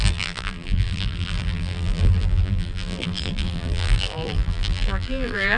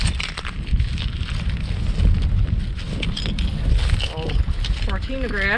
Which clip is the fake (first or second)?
first